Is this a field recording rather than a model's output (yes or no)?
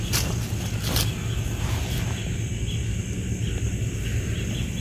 yes